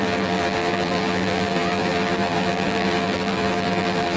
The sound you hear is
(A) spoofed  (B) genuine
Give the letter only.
A